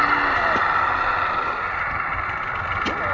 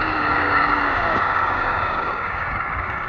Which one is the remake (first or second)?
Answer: second